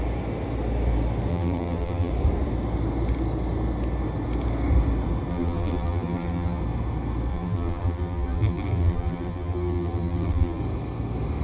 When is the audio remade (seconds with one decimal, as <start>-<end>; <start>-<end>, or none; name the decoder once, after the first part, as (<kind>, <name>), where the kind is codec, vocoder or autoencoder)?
1.3-2.1 (vocoder, BigVGAN v2); 5.3-6.6; 7.3-10.6